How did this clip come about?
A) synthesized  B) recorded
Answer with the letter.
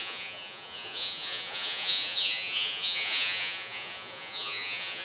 A